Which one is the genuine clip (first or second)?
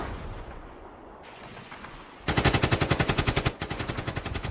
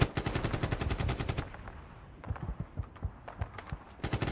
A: second